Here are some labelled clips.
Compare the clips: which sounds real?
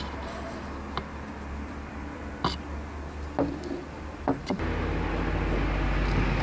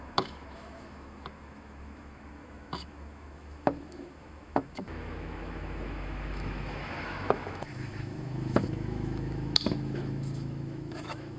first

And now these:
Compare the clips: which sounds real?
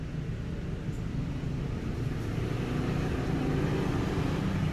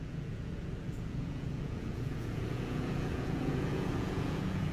first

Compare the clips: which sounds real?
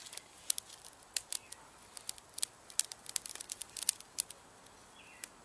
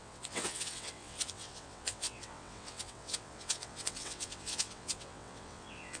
first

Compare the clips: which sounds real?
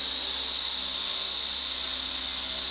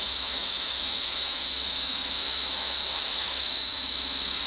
first